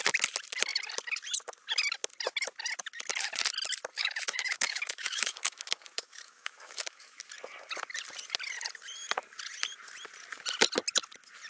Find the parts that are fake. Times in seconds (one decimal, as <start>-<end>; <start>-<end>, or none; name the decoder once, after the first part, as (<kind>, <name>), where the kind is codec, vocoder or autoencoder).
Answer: 3.9-7.2 (autoencoder, DAC-VAE)